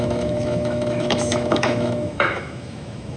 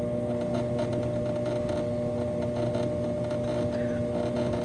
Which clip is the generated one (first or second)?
first